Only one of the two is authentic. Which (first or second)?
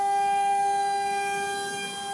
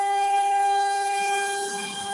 first